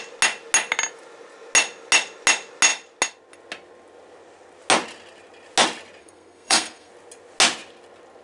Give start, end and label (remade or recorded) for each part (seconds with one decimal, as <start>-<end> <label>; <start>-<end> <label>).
0.0-6.0 recorded; 6.0-6.9 remade; 6.9-8.2 recorded